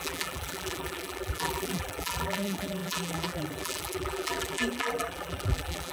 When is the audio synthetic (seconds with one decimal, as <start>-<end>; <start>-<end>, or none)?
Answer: 0.0-5.9